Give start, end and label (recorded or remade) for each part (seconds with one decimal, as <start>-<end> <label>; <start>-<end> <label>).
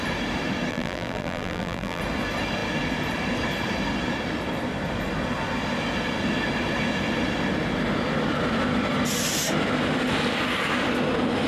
0.0-0.7 recorded; 0.7-2.0 remade; 2.0-11.5 recorded